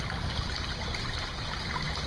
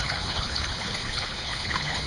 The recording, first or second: first